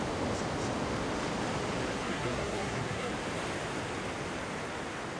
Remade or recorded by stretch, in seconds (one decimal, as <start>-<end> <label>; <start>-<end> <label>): 0.0-1.9 recorded; 1.9-3.1 remade; 3.1-5.2 recorded